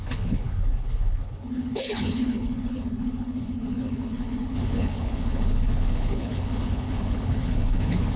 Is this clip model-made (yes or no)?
yes